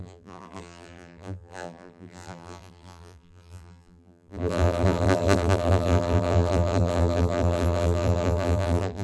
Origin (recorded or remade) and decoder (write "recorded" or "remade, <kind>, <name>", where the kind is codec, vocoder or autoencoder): remade, vocoder, BigVGAN v2